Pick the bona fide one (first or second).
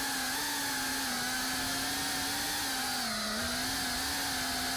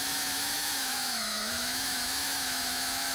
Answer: first